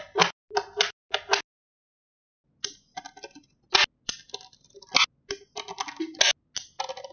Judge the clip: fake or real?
real